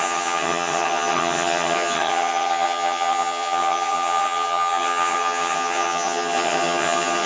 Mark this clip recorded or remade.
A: remade